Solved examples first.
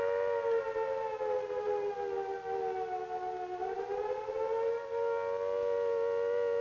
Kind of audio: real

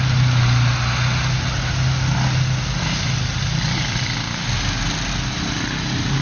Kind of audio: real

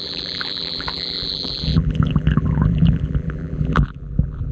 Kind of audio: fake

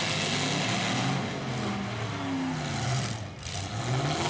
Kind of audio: real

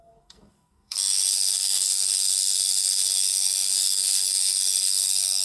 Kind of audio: fake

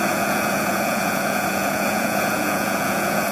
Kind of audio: fake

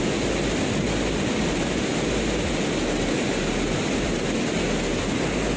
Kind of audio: real